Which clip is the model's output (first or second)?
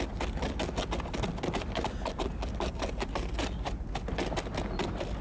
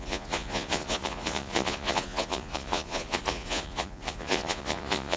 second